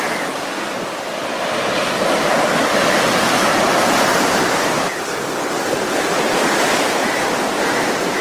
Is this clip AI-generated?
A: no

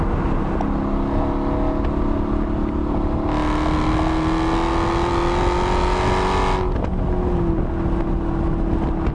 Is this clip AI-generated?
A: no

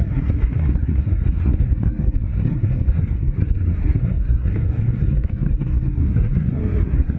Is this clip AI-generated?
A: yes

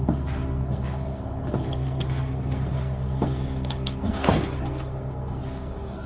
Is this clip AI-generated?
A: yes